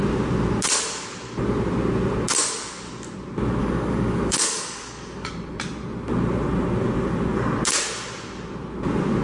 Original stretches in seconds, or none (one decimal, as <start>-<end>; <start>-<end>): 0.0-3.6; 5.3-9.2